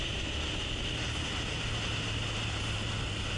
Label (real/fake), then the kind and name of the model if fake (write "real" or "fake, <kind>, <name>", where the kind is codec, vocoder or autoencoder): real